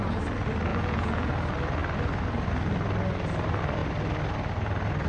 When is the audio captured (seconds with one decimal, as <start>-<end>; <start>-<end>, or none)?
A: 0.0-0.7; 1.3-5.1